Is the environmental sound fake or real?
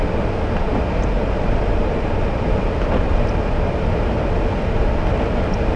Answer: real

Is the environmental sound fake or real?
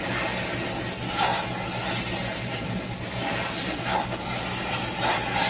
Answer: real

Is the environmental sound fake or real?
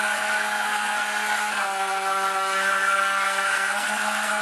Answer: fake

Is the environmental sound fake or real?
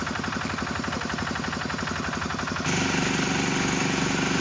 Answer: real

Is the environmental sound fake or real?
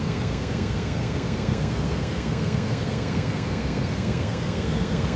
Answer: fake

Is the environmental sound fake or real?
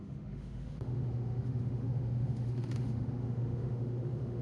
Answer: fake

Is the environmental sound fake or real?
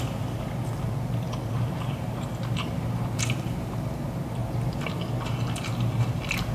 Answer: real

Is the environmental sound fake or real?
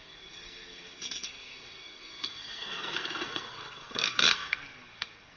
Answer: fake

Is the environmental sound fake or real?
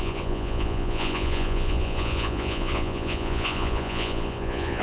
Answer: fake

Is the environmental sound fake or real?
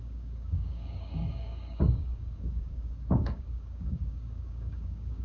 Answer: fake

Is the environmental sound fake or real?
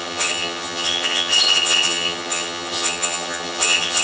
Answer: fake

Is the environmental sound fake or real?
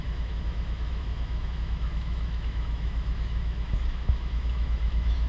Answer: fake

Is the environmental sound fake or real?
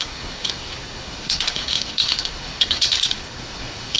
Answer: fake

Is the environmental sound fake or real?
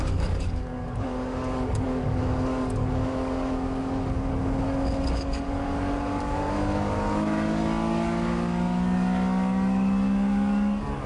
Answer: fake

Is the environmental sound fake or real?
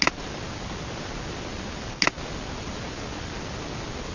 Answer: real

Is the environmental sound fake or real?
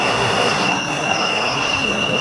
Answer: fake